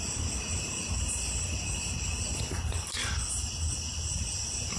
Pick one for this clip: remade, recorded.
recorded